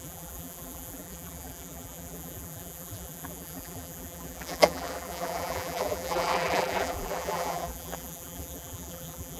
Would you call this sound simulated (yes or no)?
yes